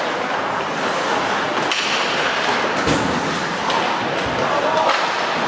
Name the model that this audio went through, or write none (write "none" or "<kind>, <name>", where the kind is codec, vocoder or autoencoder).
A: none